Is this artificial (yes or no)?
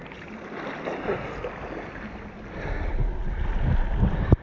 no